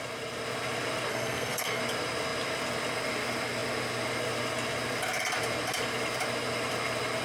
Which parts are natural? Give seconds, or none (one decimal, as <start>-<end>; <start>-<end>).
0.0-1.1; 1.8-7.2